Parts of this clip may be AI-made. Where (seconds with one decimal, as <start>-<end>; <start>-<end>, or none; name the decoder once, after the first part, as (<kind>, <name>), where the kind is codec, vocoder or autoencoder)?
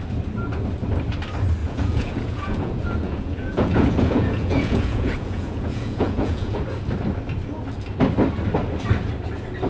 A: 1.6-6.6 (vocoder, Vocos)